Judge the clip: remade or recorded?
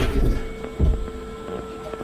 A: recorded